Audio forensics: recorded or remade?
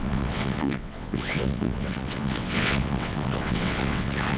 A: remade